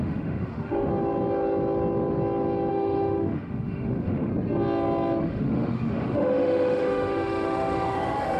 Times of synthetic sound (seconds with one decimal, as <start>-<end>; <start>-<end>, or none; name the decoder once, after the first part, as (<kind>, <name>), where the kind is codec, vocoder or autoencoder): 0.0-0.9 (autoencoder, DAC-VAE); 2.7-4.3; 5.2-8.4